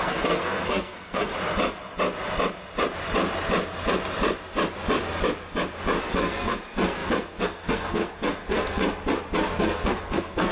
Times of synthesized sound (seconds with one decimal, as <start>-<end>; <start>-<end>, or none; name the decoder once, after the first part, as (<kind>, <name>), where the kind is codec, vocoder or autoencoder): 0.0-1.3 (codec, SNAC); 6.0-8.8; 9.6-10.5

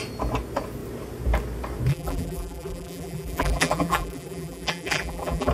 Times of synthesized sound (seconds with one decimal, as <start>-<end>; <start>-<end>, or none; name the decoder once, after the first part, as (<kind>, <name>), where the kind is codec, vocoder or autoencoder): 1.9-5.5 (vocoder, BigVGAN v2)

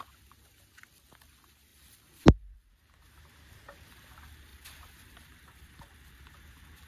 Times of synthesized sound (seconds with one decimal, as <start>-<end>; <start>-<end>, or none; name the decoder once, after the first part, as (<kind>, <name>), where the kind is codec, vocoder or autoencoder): 1.7-2.7 (vocoder, BigVGAN v2); 4.5-6.0

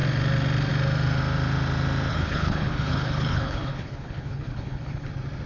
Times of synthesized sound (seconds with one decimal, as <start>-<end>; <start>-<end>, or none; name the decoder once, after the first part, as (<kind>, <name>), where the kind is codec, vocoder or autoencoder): 2.1-5.1 (codec, HILCodec)

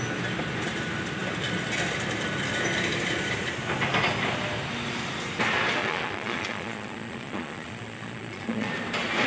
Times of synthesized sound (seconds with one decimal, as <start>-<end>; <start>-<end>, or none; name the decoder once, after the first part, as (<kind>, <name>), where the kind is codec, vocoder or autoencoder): 5.8-8.7 (vocoder, Vocos)

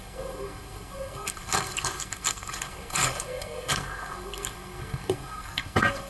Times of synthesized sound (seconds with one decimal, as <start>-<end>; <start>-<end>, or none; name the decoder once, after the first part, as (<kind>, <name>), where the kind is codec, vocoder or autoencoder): 0.0-6.1 (codec, SNAC)

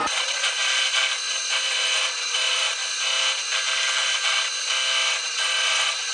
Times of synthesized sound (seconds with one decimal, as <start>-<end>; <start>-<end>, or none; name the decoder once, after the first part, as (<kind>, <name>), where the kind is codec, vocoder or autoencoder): 0.0-0.6 (vocoder, Vocos); 1.7-2.8; 5.1-6.1

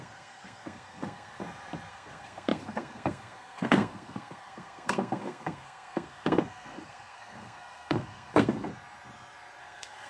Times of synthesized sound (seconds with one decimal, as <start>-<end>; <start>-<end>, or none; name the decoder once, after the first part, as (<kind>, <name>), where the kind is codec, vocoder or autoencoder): 0.0-1.4 (codec, SNAC); 1.9-8.7; 9.6-10.1